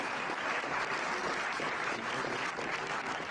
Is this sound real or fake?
real